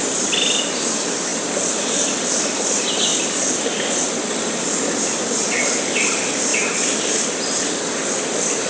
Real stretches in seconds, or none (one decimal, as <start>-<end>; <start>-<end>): 6.5-8.7